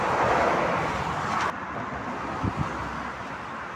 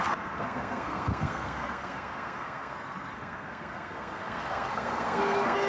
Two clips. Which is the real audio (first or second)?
first